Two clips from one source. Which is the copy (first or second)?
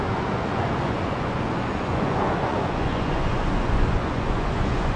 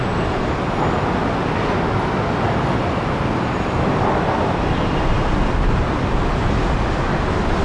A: first